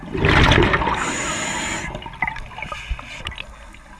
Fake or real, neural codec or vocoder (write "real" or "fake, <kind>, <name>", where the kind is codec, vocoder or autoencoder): real